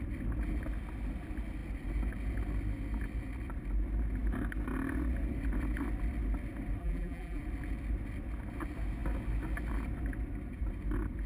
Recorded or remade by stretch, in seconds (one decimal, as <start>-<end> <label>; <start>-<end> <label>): 0.0-6.8 recorded; 6.8-7.4 remade; 7.4-11.3 recorded